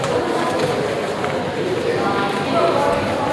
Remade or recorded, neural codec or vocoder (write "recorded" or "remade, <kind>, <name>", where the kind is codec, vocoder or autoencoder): recorded